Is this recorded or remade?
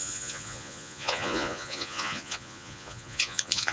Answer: remade